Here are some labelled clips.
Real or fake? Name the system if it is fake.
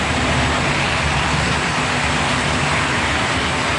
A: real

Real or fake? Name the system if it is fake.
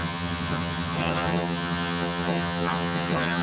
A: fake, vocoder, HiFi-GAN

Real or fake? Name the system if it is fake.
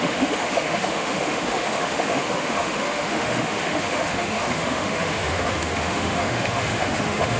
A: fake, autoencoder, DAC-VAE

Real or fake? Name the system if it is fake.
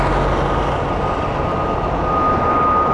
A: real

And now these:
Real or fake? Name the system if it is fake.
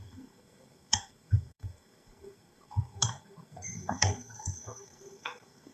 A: fake, codec, SNAC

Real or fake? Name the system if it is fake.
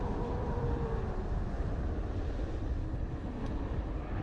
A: fake, vocoder, BigVGAN v2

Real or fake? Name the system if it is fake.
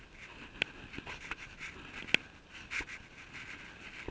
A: real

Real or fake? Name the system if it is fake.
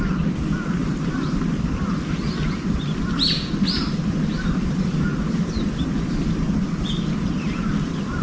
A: real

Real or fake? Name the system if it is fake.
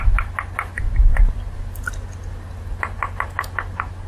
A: real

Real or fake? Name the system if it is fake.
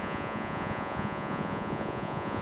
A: fake, vocoder, Vocos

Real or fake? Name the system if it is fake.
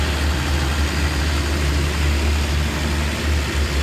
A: real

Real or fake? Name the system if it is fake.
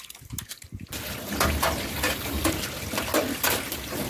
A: real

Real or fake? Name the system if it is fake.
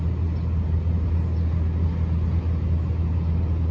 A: real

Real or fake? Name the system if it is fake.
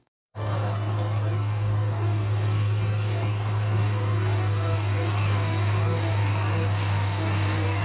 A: fake, codec, DAC